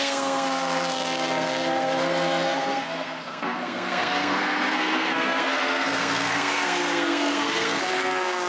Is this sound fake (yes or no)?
yes